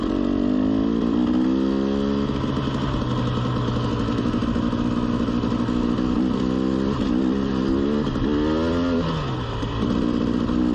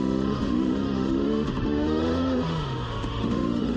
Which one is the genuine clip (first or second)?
first